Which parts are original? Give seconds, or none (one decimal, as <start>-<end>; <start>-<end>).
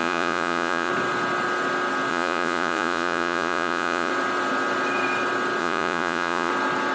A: 0.9-2.1; 4.1-5.6; 6.5-6.9